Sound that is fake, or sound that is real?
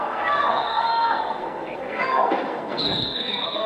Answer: fake